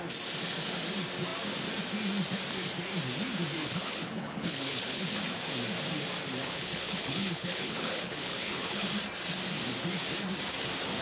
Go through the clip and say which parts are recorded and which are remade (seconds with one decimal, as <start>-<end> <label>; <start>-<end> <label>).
0.0-3.6 recorded; 3.6-5.2 remade; 5.2-6.4 recorded; 6.4-8.9 remade; 8.9-11.0 recorded